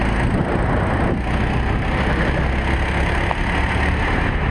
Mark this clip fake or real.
real